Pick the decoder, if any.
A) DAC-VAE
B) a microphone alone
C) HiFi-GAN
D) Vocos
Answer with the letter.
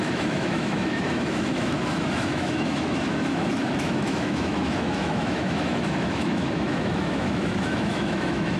A